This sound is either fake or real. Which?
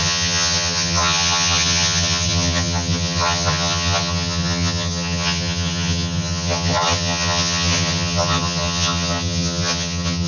fake